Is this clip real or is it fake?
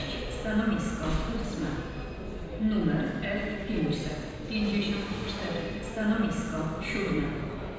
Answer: real